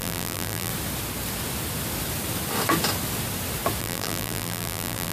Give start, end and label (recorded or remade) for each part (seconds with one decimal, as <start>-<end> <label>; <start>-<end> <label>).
0.0-0.7 remade; 0.7-3.8 recorded; 3.8-5.1 remade